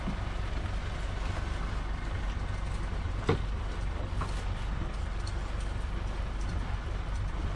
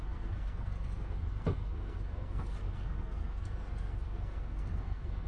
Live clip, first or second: first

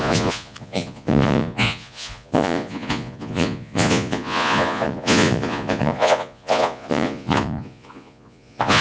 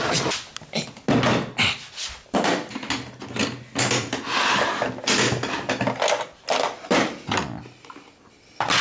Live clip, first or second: second